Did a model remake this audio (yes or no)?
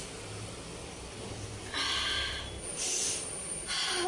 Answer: no